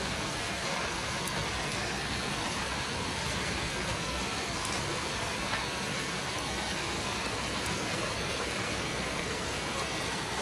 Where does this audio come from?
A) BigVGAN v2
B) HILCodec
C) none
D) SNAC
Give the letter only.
D